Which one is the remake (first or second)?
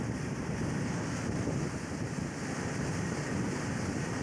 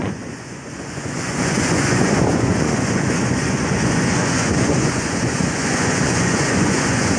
second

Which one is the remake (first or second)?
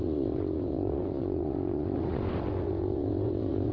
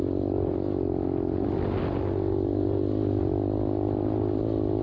first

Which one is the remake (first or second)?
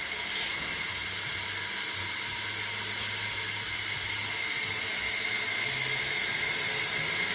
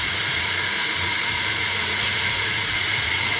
second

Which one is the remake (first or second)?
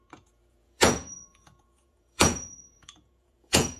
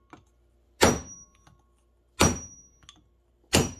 first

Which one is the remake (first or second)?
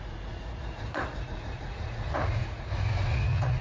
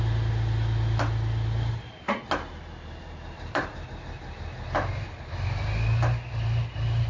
first